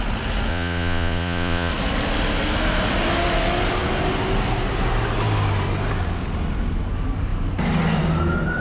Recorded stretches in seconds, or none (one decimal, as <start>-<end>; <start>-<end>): 0.0-0.5; 1.7-8.6